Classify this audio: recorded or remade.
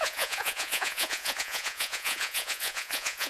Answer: remade